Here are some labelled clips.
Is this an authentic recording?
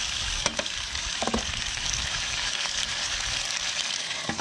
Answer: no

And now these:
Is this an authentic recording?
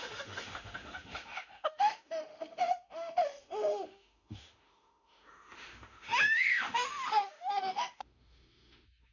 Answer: no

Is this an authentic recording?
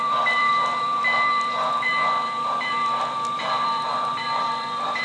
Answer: no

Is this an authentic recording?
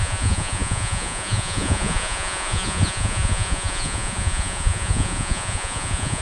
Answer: no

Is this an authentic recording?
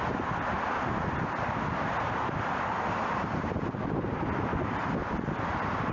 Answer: yes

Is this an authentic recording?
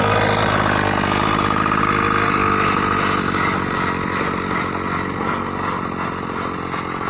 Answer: yes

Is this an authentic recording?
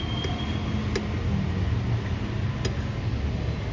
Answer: yes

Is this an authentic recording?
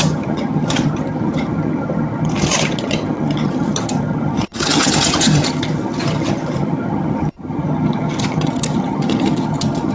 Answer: no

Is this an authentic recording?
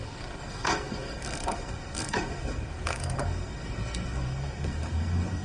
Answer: no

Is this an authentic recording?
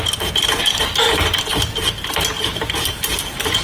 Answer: yes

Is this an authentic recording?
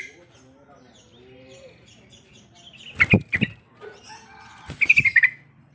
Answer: yes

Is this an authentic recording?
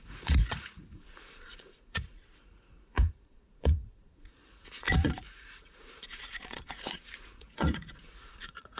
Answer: no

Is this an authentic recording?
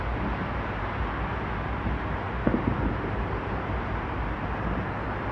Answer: yes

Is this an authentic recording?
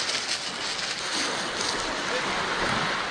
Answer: yes